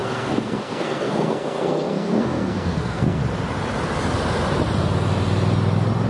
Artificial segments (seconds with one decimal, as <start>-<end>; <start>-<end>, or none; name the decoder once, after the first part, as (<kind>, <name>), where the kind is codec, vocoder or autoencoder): 0.0-3.2 (codec, SNAC)